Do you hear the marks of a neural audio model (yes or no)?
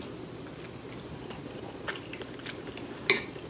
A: no